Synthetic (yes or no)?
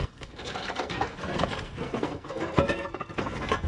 yes